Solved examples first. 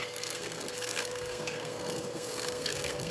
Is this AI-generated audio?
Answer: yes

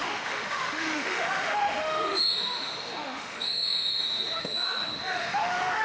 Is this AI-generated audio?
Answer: yes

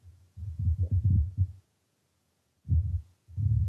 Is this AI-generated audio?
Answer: yes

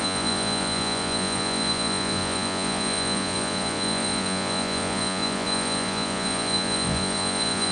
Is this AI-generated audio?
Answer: yes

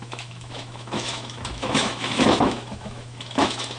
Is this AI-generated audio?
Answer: yes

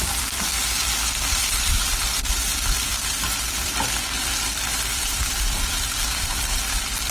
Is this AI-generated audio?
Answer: yes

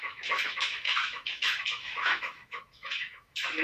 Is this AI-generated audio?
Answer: yes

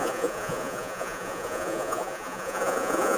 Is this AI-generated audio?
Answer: yes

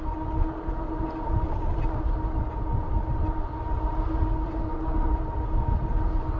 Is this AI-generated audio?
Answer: no